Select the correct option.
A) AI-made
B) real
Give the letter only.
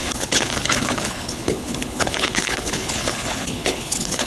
A